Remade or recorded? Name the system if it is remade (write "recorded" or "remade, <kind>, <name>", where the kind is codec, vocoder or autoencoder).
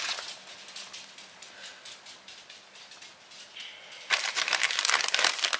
recorded